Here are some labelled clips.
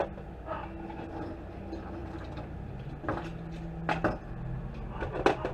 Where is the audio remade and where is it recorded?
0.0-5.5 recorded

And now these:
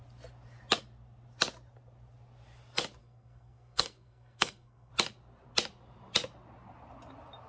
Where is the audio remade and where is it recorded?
0.0-3.0 recorded; 3.0-4.9 remade; 4.9-7.5 recorded